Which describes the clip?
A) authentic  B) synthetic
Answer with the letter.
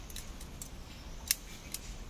A